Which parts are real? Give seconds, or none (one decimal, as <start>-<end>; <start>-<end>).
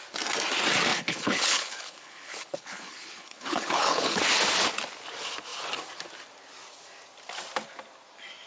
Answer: 0.0-0.9; 4.2-8.5